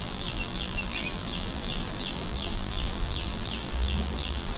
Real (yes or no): no